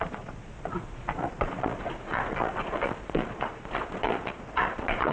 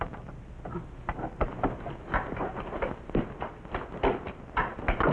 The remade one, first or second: first